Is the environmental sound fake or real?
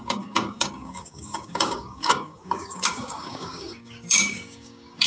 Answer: fake